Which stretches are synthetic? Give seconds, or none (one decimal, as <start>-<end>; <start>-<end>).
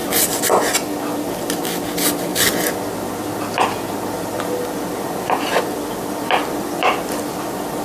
none